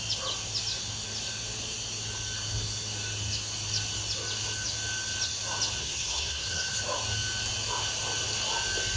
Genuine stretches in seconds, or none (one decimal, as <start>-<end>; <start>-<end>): 0.0-5.8; 6.8-9.0